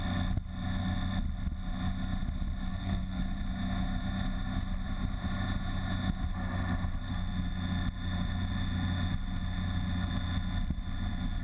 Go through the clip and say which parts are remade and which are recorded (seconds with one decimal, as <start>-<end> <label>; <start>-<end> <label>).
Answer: 0.0-2.7 recorded; 2.7-3.2 remade; 3.2-11.4 recorded